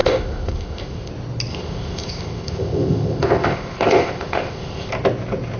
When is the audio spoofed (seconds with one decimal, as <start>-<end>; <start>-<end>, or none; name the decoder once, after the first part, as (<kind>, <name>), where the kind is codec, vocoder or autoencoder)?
0.0-1.1 (codec, ZipCodec); 1.5-4.9